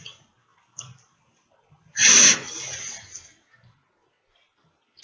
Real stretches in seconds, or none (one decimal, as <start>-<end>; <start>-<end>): 0.0-0.5; 2.2-5.0